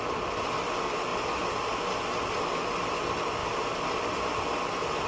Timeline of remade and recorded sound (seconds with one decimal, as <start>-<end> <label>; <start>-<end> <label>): 0.0-5.1 recorded